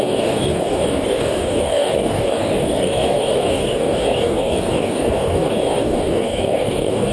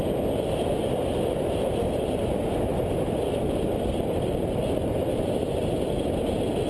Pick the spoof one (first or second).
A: first